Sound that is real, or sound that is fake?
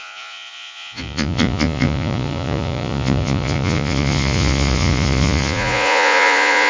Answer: fake